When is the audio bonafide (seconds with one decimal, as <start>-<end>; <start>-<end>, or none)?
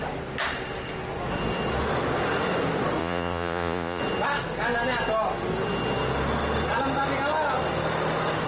0.0-3.0; 4.0-8.5